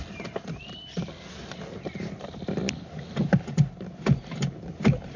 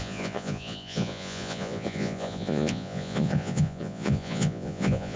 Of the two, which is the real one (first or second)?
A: first